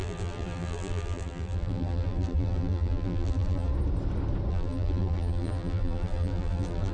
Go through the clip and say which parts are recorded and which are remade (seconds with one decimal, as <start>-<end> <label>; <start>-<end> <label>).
0.0-3.7 remade; 3.7-4.5 recorded; 4.5-6.9 remade